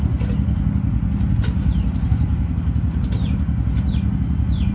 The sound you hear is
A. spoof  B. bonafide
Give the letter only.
B